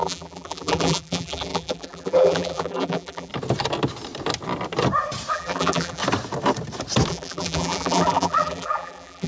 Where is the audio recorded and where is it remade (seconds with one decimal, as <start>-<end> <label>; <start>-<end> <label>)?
0.0-3.3 remade; 3.3-5.3 recorded; 5.3-6.0 remade; 6.0-7.1 recorded; 7.1-9.3 remade